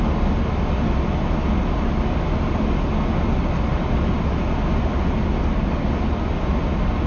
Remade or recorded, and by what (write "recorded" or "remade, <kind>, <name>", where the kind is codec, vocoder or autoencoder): recorded